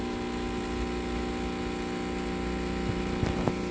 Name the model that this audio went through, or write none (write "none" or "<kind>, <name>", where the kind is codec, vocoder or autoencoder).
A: none